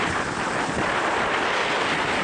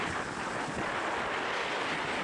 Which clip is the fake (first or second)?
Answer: first